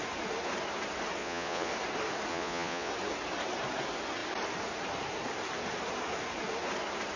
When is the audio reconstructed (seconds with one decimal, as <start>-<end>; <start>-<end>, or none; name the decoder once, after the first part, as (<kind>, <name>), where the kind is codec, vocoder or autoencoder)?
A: 1.2-1.7 (vocoder, Vocos); 2.3-2.9